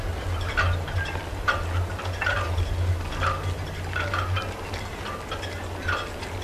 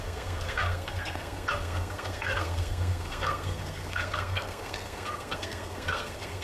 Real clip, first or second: first